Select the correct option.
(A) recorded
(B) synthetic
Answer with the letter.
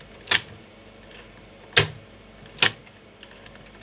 A